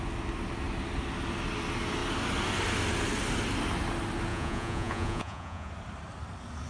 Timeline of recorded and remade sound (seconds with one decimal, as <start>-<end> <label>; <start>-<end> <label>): 0.0-4.3 recorded; 4.3-5.7 remade; 5.7-6.7 recorded